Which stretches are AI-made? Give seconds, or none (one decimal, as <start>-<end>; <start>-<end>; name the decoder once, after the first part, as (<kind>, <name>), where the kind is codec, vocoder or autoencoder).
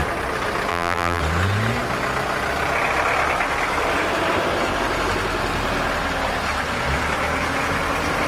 0.7-1.2 (vocoder, BigVGAN v2)